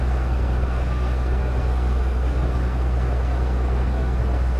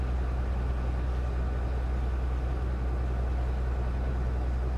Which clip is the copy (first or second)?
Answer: first